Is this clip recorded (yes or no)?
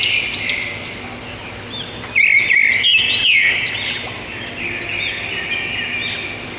yes